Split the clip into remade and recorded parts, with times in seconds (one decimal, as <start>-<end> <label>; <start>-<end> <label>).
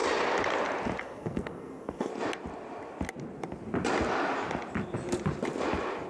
0.0-1.0 recorded; 1.0-2.1 remade; 2.1-6.1 recorded